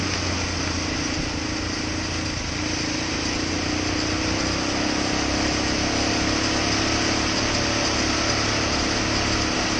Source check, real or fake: real